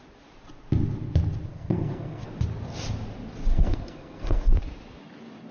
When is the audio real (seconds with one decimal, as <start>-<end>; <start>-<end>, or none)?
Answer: 0.0-1.5; 2.3-3.5; 4.5-5.5